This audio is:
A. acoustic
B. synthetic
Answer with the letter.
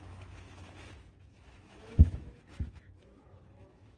B